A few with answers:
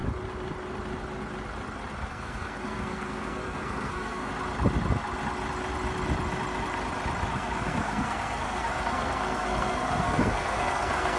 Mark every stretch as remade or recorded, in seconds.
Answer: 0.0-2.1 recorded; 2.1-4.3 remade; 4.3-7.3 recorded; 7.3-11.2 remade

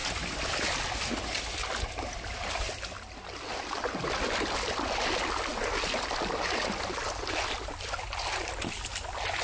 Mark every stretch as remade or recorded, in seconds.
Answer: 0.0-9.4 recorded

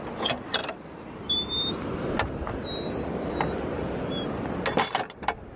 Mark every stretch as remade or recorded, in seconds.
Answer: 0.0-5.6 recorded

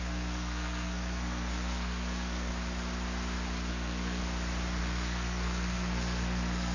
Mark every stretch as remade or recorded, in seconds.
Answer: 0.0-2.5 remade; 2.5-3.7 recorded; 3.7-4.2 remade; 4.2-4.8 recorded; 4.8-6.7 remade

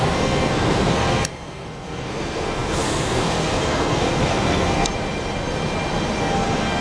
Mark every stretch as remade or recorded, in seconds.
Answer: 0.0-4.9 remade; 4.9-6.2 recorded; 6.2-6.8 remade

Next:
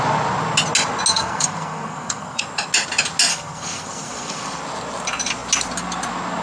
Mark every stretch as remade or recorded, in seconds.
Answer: 0.0-1.1 recorded; 1.1-2.4 remade; 2.4-3.3 recorded; 3.3-4.6 remade; 4.6-6.4 recorded

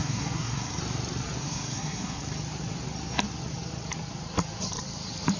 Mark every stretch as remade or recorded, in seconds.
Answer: 0.0-0.8 remade; 0.8-1.4 recorded; 1.4-2.2 remade; 2.2-5.4 recorded

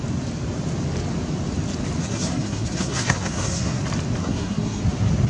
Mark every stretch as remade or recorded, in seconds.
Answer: 0.0-2.0 recorded; 2.0-3.8 remade; 3.8-4.2 recorded; 4.2-4.8 remade; 4.8-5.3 recorded